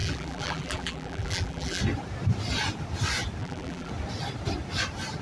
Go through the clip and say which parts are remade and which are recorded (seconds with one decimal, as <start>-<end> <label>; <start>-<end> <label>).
0.0-1.8 remade; 1.8-3.4 recorded; 3.4-3.9 remade; 3.9-5.2 recorded